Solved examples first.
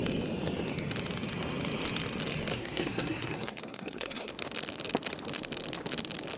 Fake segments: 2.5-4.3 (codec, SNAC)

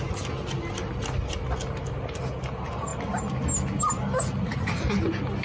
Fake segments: none

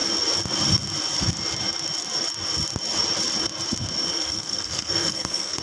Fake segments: 4.1-5.6 (codec, SNAC)